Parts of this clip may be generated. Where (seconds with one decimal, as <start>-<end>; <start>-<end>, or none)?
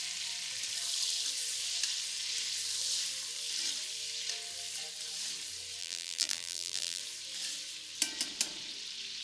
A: 5.8-7.0